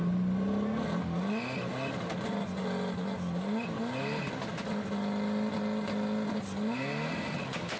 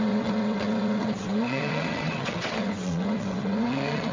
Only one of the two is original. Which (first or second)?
first